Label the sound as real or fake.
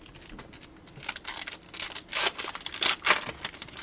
real